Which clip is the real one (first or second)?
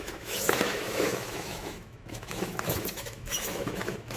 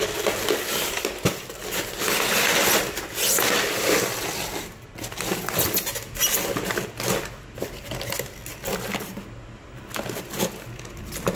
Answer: second